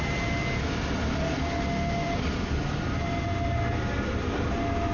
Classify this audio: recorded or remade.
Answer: recorded